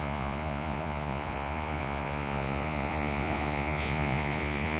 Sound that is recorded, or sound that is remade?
remade